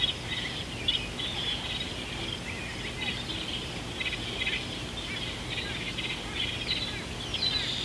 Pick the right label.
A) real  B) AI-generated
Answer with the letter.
A